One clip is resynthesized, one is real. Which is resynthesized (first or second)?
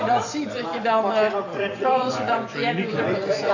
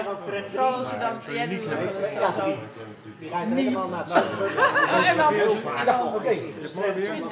first